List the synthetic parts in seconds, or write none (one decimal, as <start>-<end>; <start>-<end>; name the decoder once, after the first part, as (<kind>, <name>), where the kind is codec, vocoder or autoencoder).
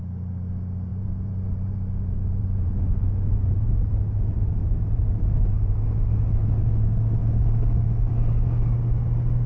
0.9-3.7 (vocoder, Vocos); 4.6-5.7